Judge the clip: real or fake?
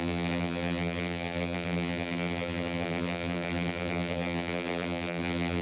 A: fake